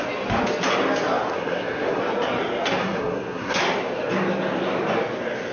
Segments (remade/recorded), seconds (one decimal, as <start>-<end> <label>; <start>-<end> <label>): 0.0-1.3 recorded; 1.3-2.0 remade; 2.0-2.8 recorded; 2.8-3.6 remade; 3.6-5.5 recorded